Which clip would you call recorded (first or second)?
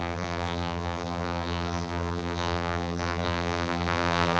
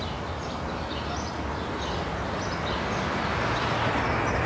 second